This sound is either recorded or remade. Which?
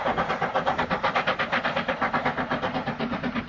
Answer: recorded